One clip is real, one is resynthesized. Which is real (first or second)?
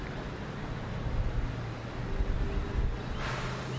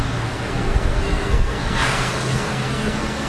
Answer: first